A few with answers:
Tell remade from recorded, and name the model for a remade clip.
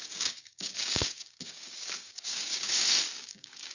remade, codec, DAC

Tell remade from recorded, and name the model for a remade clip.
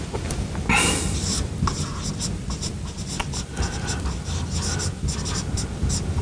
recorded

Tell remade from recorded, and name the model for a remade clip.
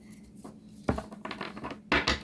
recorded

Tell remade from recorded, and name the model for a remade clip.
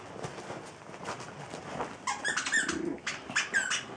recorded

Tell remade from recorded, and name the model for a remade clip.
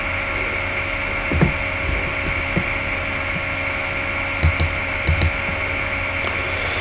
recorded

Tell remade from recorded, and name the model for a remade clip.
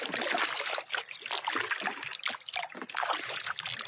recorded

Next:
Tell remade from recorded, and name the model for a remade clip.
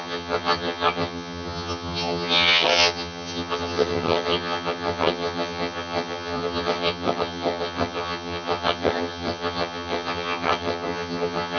remade, vocoder, HiFi-GAN